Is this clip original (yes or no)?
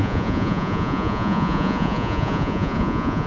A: no